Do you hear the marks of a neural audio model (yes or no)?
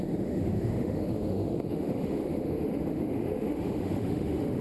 yes